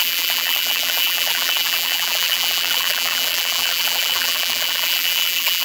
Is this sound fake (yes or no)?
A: yes